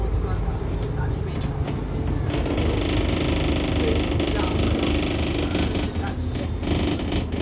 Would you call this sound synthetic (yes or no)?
no